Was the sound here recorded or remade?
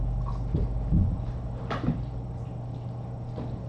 recorded